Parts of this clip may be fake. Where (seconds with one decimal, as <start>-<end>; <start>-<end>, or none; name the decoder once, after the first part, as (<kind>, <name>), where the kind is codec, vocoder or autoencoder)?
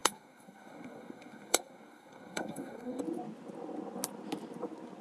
0.0-3.0 (codec, SNAC)